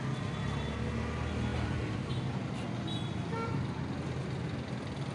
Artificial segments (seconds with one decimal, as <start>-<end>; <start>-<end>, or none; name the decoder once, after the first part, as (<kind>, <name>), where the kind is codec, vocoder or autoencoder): 1.5-2.1 (vocoder, BigVGAN v2)